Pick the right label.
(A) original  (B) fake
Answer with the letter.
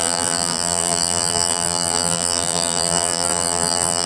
B